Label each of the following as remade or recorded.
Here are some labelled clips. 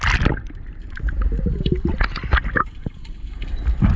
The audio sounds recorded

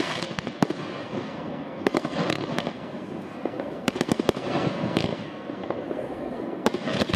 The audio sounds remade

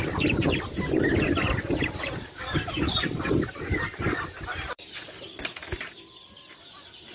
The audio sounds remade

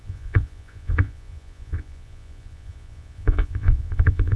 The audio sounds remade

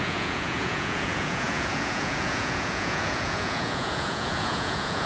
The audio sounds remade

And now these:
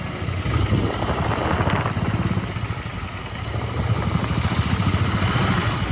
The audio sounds recorded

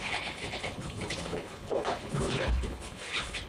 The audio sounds remade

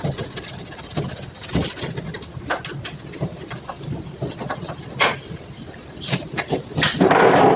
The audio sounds recorded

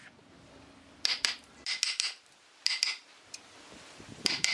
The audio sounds recorded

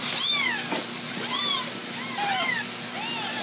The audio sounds recorded